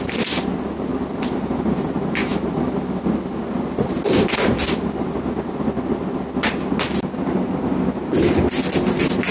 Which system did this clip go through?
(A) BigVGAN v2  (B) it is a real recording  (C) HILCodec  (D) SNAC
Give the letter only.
B